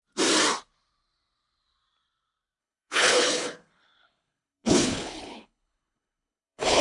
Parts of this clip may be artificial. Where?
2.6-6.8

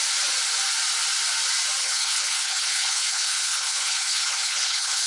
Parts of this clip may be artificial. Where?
1.8-5.1